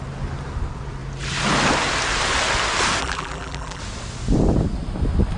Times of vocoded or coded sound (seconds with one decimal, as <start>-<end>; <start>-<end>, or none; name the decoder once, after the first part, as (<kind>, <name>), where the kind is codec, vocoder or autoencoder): 3.0-3.8 (vocoder, BigVGAN v2)